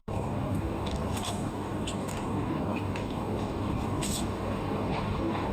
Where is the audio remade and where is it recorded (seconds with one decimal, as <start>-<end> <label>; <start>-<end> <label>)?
0.0-5.5 remade